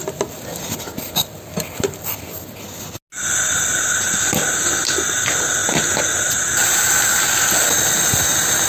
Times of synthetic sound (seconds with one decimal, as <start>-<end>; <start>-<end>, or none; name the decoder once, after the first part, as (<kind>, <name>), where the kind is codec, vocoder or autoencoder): none